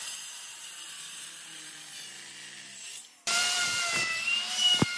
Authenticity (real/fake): fake